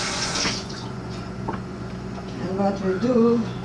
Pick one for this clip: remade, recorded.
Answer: remade